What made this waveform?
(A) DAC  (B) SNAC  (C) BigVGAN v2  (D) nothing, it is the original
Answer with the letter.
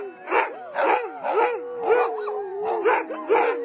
D